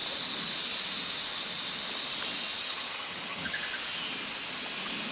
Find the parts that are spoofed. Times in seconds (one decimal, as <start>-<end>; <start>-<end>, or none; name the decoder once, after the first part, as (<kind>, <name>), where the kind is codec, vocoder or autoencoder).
2.6-3.6 (vocoder, HiFi-GAN)